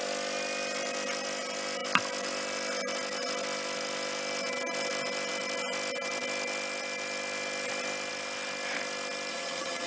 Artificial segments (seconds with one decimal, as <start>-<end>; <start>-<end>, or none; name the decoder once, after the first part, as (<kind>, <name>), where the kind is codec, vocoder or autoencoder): 9.3-9.9 (vocoder, HiFi-GAN)